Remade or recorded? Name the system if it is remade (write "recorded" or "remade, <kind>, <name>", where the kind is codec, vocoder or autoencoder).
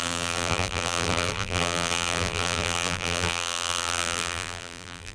remade, vocoder, BigVGAN v2